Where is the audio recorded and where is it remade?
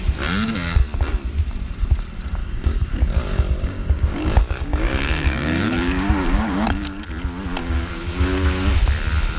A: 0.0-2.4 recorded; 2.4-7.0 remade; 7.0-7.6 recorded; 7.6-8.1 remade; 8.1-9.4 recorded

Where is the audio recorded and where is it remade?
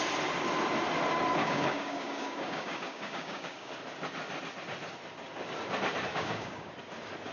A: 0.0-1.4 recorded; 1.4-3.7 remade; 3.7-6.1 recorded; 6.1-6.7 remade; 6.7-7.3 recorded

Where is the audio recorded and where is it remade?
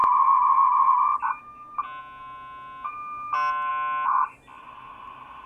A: 0.0-5.5 recorded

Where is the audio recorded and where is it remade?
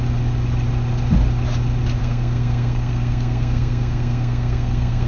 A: 0.0-2.0 recorded; 2.0-5.1 remade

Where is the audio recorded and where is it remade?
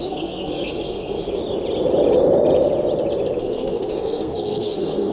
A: 0.0-1.4 remade; 1.4-3.4 recorded; 3.4-5.1 remade